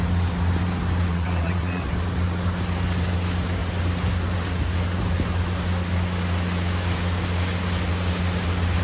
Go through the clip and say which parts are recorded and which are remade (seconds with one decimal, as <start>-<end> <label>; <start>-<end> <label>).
0.0-1.1 recorded; 1.1-1.9 remade; 1.9-8.8 recorded